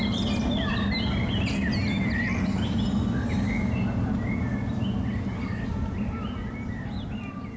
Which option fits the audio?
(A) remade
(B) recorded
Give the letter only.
B